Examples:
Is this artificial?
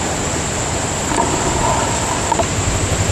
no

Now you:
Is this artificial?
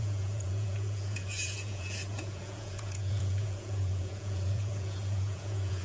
yes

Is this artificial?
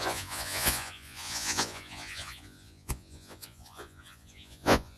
yes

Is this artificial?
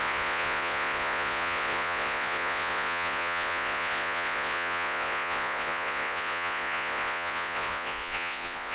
yes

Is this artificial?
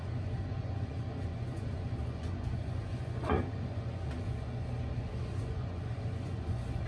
yes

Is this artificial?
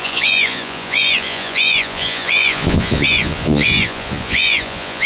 yes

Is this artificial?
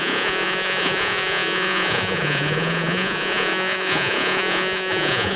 yes